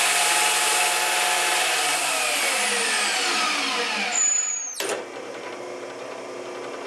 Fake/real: real